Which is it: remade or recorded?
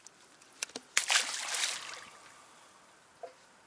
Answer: recorded